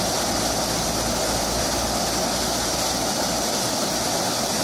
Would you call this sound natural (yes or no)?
yes